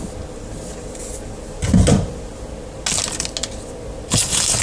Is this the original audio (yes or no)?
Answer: yes